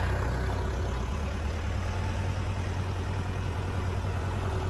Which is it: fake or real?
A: fake